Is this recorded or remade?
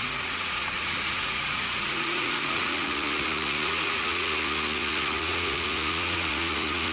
remade